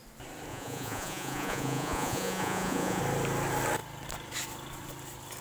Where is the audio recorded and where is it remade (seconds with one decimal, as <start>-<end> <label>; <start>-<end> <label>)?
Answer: 0.0-0.5 recorded; 0.5-3.0 remade; 3.0-5.4 recorded